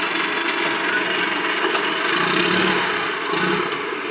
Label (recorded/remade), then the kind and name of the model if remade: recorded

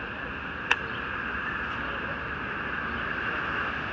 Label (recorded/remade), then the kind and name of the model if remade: recorded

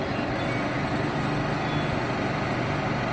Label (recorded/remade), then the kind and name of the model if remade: recorded